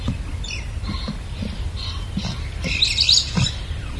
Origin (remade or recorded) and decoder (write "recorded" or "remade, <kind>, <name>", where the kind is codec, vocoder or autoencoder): recorded